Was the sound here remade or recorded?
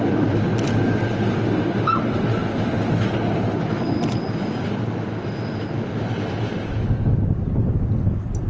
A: recorded